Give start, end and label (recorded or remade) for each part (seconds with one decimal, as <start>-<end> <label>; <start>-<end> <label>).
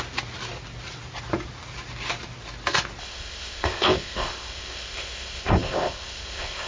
0.0-3.0 recorded; 3.0-6.7 remade